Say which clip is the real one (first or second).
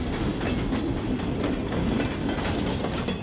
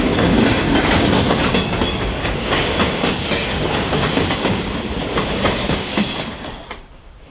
first